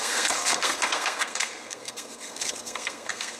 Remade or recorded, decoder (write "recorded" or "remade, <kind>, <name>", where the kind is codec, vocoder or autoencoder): remade, codec, SNAC